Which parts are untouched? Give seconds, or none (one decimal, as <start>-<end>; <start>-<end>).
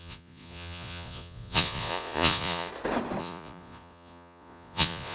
2.7-3.2